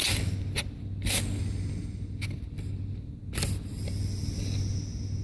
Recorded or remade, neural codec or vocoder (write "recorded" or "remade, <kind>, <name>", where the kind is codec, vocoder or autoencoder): recorded